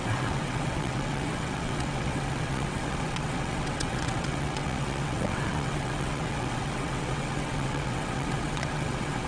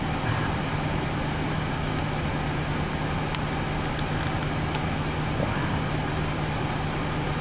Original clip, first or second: second